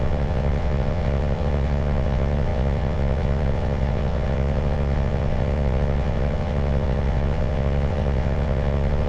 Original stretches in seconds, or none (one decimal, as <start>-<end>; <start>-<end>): none